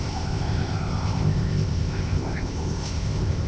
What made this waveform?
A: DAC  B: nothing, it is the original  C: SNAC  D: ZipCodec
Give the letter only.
D